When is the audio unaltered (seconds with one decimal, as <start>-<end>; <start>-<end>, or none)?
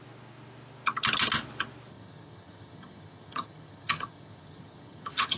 0.0-1.9